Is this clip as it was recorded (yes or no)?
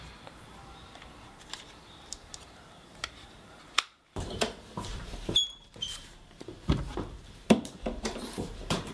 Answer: no